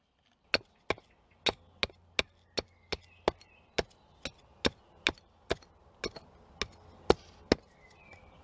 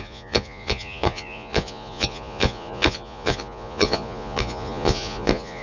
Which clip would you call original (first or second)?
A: first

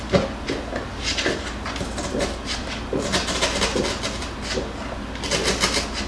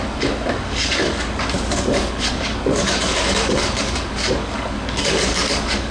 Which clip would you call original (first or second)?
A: first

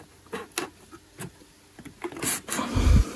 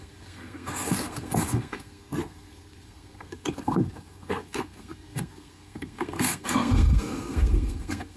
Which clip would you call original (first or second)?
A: first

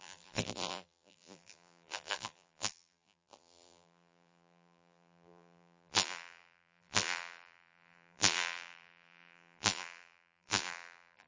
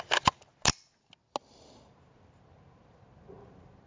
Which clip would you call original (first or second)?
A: second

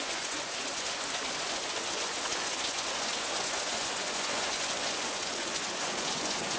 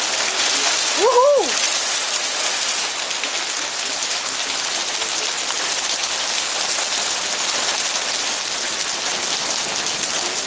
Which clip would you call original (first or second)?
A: second